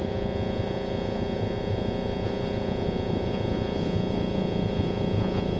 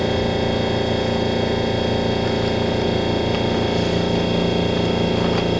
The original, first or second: second